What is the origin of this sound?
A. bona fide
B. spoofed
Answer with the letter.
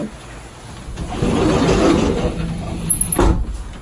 A